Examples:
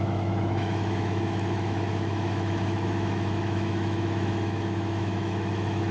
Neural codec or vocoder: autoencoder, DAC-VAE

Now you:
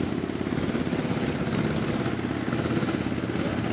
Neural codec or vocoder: none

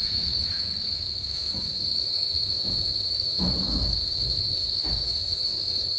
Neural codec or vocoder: autoencoder, DAC-VAE